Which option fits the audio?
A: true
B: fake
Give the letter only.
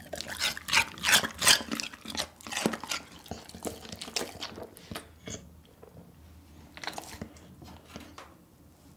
A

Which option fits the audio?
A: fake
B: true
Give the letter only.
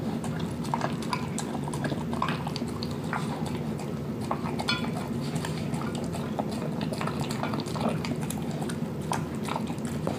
B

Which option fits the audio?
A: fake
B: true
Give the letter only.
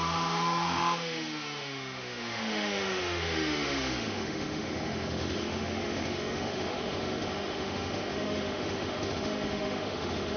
A